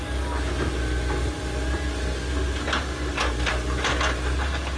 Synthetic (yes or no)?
no